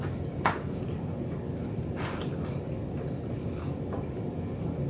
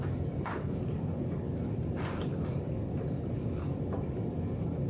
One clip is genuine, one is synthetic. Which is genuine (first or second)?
first